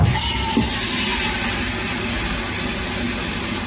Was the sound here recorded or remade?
recorded